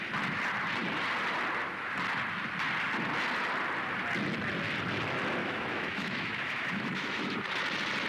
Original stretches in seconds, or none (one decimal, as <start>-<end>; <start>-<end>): 0.0-5.4; 7.4-8.1